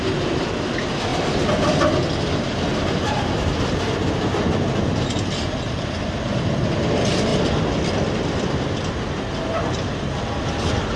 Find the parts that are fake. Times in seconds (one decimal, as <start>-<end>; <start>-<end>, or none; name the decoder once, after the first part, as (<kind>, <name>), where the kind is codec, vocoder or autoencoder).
none